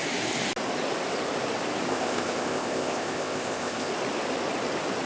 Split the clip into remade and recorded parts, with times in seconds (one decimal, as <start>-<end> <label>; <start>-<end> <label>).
0.0-1.9 recorded; 1.9-3.9 remade; 3.9-5.1 recorded